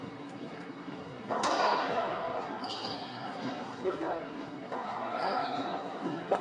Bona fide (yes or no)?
no